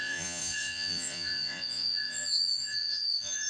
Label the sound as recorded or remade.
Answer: remade